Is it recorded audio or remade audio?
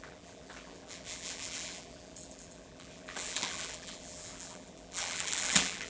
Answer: remade